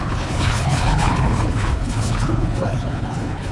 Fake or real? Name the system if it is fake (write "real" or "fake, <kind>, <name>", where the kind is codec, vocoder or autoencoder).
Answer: fake, codec, HILCodec